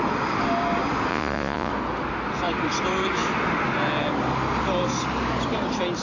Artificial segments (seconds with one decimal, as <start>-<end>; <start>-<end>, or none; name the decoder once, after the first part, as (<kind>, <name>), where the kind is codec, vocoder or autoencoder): 1.1-1.7 (vocoder, Vocos)